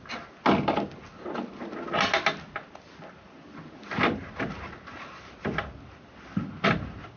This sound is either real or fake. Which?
real